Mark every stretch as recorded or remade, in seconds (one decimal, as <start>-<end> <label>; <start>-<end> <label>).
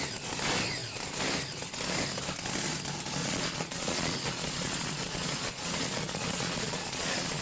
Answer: 0.0-3.2 recorded; 3.2-7.4 remade